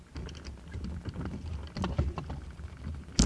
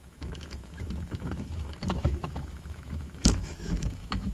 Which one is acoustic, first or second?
first